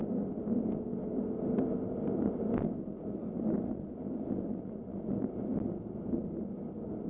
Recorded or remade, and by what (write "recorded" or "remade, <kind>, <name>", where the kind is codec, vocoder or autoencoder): recorded